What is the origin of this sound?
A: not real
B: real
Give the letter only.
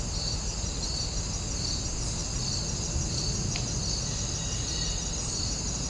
B